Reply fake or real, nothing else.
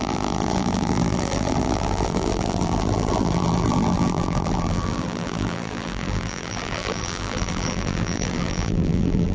fake